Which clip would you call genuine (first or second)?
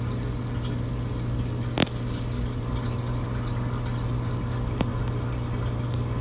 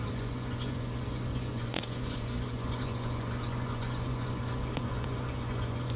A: first